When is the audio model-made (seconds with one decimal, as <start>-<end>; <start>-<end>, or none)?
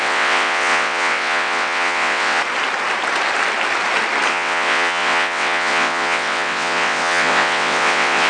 0.0-2.4; 4.3-8.3